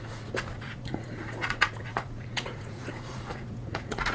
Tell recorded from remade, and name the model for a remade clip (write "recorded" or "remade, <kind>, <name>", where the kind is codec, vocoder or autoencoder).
remade, vocoder, Vocos